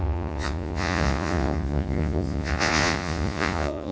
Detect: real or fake fake